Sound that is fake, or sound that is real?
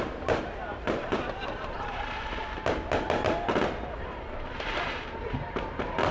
fake